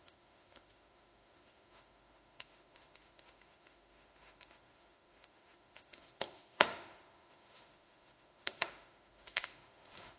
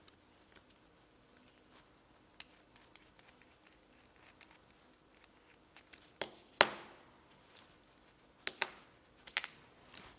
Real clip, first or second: second